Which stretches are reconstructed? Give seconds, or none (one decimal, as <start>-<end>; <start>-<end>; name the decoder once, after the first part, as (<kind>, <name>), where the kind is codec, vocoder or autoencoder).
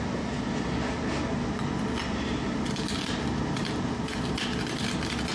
none